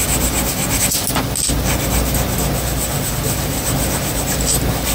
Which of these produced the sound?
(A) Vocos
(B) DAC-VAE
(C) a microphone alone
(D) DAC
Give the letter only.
C